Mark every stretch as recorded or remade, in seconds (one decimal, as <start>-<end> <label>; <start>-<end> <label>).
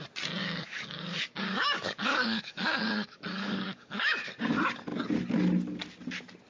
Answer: 0.0-0.4 recorded; 0.4-4.3 remade; 4.3-6.5 recorded